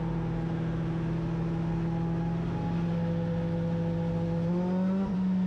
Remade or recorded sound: recorded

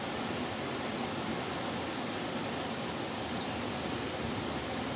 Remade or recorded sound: recorded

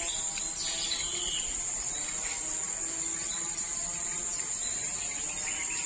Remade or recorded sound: recorded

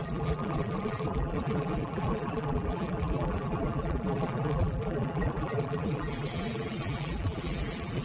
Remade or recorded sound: remade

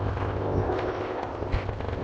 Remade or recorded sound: remade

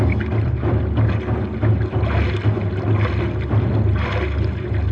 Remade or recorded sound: recorded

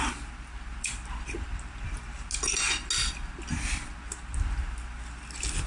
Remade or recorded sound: recorded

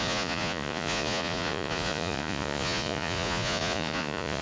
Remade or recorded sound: remade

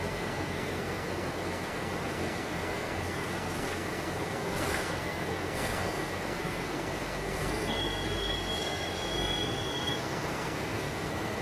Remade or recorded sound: remade